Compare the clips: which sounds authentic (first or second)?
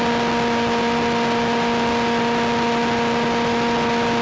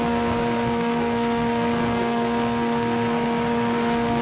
first